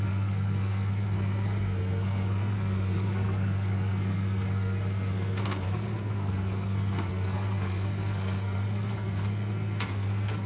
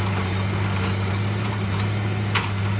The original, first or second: second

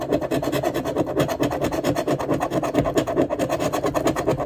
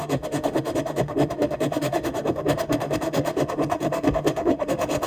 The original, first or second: first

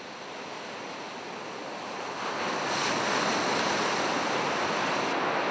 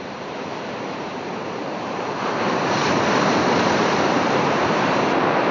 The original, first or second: first